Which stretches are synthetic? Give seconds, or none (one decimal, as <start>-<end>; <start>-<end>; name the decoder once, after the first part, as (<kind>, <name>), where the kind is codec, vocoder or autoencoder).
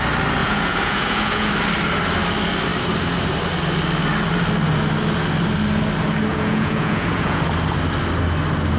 0.4-1.5 (vocoder, Vocos); 6.3-7.4